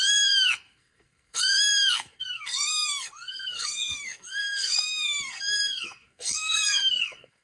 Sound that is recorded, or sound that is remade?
remade